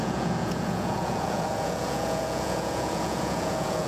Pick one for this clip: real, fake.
fake